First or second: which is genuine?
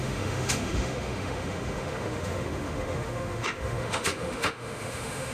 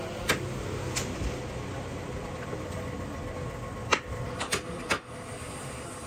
second